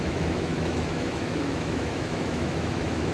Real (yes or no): no